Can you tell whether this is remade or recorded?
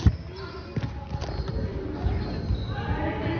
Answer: recorded